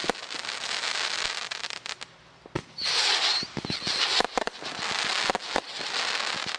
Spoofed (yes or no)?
no